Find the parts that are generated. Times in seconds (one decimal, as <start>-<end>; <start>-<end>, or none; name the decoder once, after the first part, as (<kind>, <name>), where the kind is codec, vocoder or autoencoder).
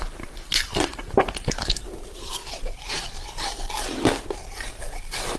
0.0-2.4 (vocoder, BigVGAN v2); 4.8-5.4